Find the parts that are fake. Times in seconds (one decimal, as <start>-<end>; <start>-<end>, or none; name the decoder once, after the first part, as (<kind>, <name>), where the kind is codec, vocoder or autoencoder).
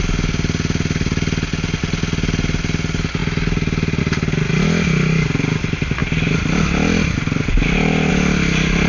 none